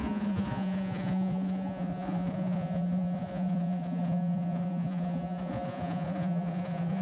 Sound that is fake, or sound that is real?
fake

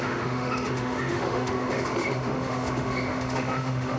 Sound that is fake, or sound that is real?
fake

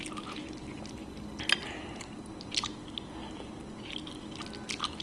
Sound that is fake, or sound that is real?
real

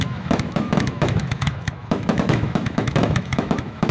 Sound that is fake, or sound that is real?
fake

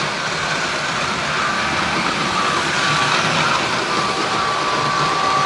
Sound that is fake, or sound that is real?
real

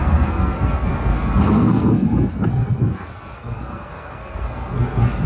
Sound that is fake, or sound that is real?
fake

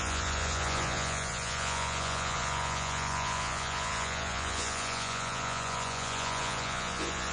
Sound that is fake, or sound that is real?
fake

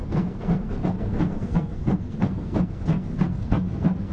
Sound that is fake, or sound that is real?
fake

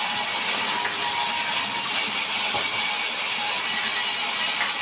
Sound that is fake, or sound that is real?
real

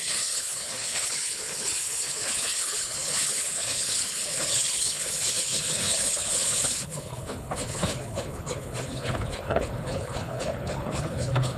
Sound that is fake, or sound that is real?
fake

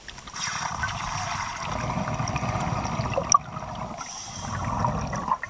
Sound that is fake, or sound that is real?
real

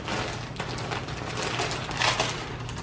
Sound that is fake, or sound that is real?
real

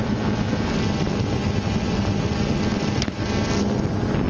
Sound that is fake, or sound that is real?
real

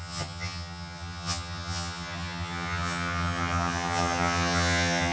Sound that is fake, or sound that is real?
fake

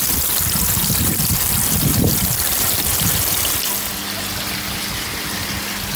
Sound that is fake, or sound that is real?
real